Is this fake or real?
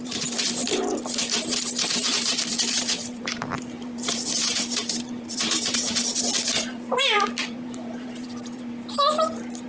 fake